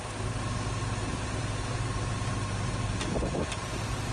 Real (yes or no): yes